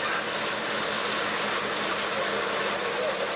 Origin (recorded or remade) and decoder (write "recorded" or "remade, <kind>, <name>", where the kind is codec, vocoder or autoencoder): recorded